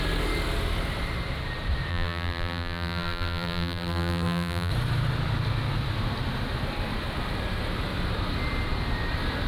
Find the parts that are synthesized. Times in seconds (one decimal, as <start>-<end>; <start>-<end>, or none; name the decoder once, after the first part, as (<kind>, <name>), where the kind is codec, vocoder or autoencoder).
1.9-4.7 (vocoder, BigVGAN v2)